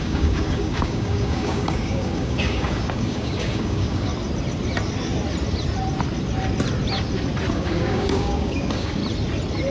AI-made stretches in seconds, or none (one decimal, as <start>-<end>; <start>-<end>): 0.0-4.1; 7.5-9.0